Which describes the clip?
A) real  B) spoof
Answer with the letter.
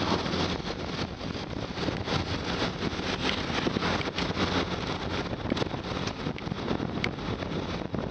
A